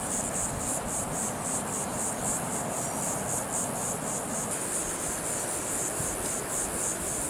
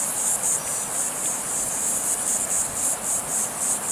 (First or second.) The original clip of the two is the first